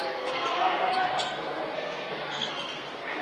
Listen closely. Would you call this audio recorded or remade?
remade